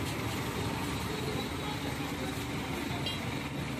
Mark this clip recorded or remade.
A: recorded